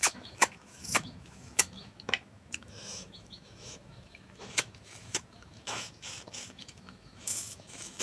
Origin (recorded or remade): remade